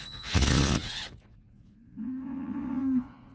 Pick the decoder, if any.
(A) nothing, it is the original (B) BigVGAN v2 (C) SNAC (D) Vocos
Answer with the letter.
D